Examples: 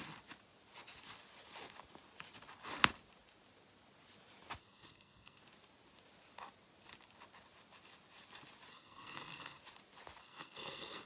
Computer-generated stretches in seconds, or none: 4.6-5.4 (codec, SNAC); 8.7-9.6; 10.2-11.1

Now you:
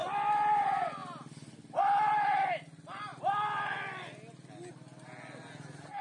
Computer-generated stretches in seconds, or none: none

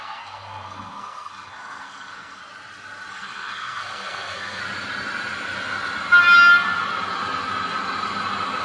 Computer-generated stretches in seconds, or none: 0.0-2.4 (codec, SNAC); 3.1-4.6

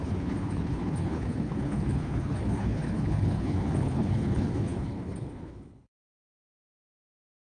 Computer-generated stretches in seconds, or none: 0.0-7.6 (codec, HILCodec)

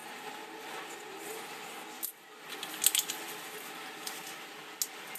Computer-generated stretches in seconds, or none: none

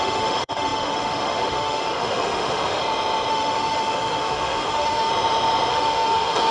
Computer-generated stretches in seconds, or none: 0.0-2.8 (autoencoder, DAC-VAE); 3.3-5.1; 5.7-6.5